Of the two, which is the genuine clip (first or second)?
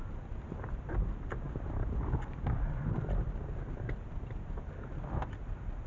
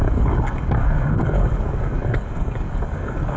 first